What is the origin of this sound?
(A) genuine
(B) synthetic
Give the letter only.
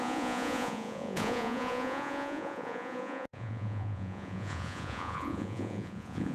B